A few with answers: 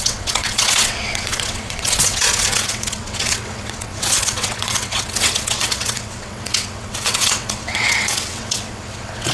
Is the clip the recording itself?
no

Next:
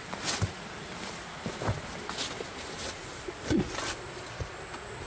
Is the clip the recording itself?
yes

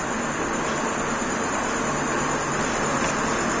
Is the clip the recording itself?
yes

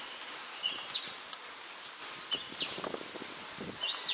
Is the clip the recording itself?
yes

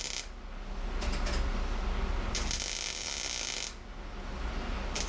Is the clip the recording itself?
yes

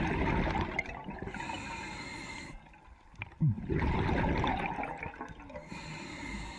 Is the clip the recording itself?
yes